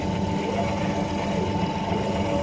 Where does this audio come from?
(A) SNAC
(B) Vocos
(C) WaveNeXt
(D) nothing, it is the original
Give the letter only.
D